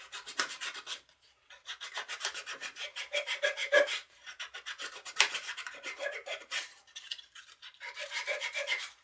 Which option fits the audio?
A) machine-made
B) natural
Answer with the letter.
A